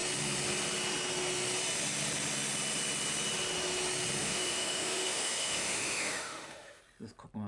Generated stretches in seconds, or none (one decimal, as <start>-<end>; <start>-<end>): 4.2-6.8